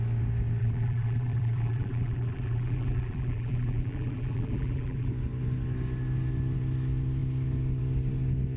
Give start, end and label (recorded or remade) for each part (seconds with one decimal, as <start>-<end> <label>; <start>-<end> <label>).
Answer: 0.0-0.6 recorded; 0.6-5.1 remade; 5.1-8.6 recorded